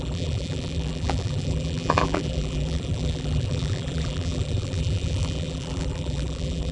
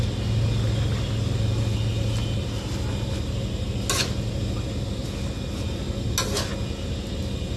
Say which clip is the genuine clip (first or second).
second